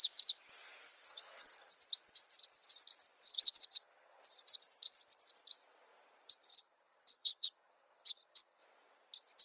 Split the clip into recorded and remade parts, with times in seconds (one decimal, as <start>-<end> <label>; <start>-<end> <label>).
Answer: 0.0-1.1 recorded; 1.1-1.7 remade; 1.7-3.3 recorded; 3.3-4.2 remade; 4.2-6.5 recorded; 6.5-8.6 remade; 8.6-9.4 recorded